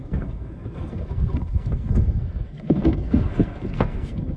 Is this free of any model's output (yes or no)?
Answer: no